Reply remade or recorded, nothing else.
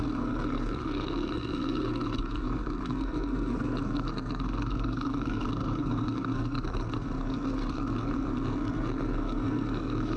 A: remade